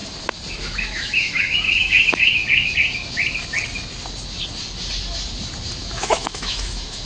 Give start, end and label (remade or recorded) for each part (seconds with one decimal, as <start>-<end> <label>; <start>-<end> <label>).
0.0-0.5 recorded; 0.5-2.4 remade; 2.4-5.8 recorded; 5.8-7.1 remade